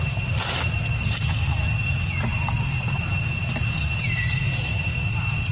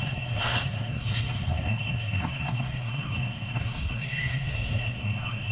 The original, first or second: first